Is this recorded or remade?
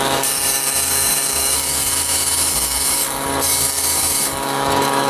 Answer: remade